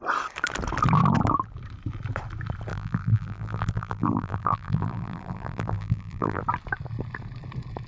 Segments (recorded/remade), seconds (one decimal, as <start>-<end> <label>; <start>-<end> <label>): 0.0-2.7 recorded; 2.7-6.4 remade; 6.4-7.9 recorded